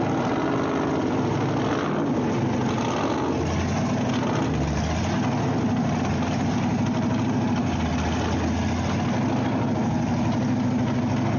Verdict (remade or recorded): recorded